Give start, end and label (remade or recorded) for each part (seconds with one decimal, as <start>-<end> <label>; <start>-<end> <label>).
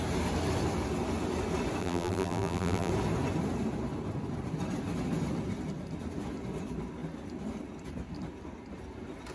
0.0-1.8 recorded; 1.8-2.9 remade; 2.9-9.3 recorded